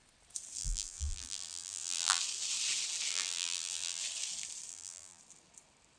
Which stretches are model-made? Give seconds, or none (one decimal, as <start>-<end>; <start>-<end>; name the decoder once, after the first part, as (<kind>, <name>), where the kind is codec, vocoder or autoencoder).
0.6-2.2 (vocoder, BigVGAN v2); 3.1-4.0; 4.7-5.2